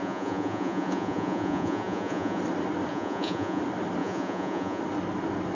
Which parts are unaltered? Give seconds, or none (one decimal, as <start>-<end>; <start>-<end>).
2.4-2.9; 3.6-4.0; 4.8-5.5